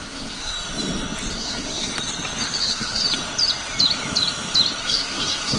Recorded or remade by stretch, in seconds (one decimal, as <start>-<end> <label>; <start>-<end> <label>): 0.0-0.5 remade; 0.5-1.3 recorded; 1.3-1.9 remade; 1.9-2.6 recorded; 2.6-3.0 remade; 3.0-4.8 recorded; 4.8-5.6 remade